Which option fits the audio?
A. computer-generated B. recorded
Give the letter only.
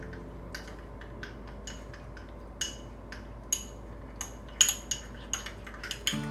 B